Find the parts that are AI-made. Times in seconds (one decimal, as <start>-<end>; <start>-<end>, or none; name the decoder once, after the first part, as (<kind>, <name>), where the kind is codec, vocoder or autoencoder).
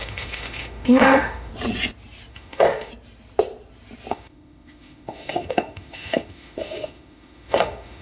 0.0-1.5 (autoencoder, DAC-VAE); 2.3-2.9; 4.1-8.0